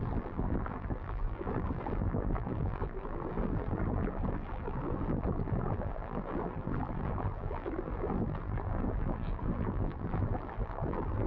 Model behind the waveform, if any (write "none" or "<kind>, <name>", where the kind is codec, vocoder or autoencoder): vocoder, BigVGAN v2